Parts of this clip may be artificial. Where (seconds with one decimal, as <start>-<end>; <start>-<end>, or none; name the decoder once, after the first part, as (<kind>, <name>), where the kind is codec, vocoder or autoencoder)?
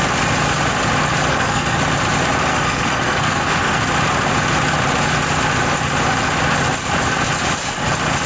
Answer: 1.3-1.8 (codec, SNAC); 2.5-3.8